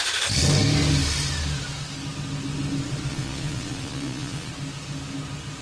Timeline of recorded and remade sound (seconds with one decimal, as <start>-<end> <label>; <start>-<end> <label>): 0.0-3.1 recorded; 3.1-4.5 remade; 4.5-5.6 recorded